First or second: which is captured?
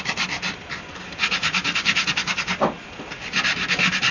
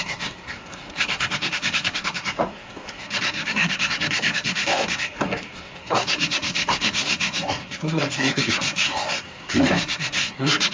first